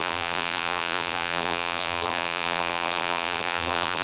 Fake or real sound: fake